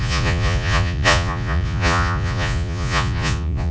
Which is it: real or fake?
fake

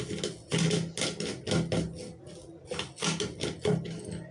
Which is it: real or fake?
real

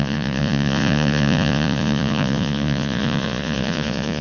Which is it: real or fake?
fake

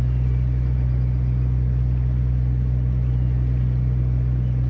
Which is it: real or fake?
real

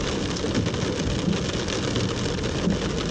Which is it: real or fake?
real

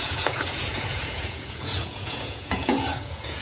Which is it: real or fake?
fake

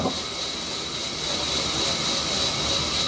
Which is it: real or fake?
real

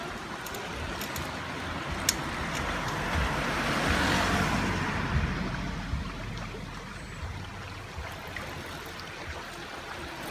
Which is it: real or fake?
real